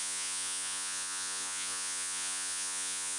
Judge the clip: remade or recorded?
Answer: remade